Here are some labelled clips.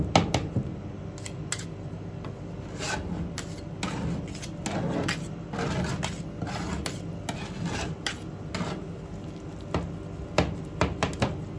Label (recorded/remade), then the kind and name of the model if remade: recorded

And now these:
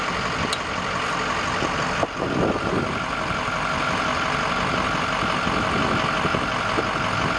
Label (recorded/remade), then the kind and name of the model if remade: recorded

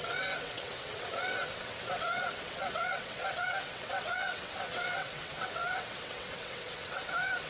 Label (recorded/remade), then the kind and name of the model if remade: remade, vocoder, WaveNeXt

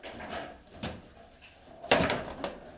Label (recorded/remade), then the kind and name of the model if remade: recorded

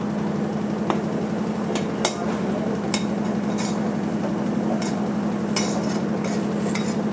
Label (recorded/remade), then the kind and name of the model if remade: recorded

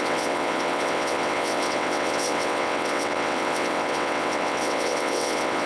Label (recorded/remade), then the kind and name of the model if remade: remade, vocoder, WaveNeXt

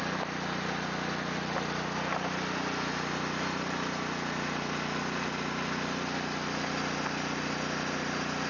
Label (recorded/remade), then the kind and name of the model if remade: recorded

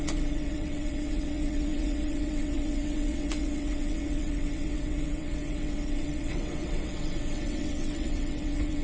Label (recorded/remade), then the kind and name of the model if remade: remade, vocoder, WaveNeXt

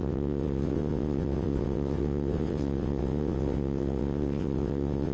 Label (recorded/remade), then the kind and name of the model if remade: remade, vocoder, WaveNeXt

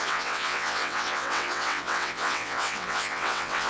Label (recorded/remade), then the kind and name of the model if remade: remade, vocoder, WaveNeXt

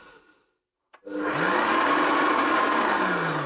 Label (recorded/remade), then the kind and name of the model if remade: recorded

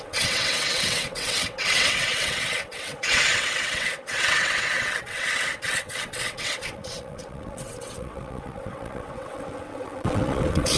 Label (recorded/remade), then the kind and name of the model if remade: remade, vocoder, WaveNeXt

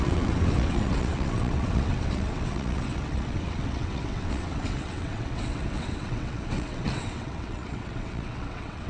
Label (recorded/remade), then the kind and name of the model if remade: remade, vocoder, WaveNeXt